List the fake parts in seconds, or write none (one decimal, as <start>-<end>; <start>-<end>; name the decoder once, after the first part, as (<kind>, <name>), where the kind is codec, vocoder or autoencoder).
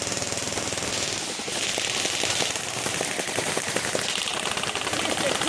1.7-2.6 (vocoder, BigVGAN v2)